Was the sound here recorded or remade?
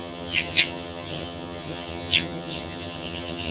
remade